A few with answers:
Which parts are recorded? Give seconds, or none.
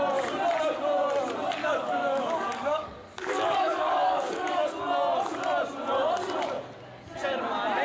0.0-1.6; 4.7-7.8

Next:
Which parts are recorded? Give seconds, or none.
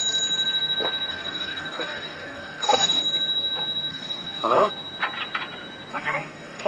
0.0-1.1; 3.0-3.9; 4.7-5.9